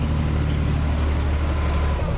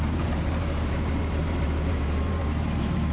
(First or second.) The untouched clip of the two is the first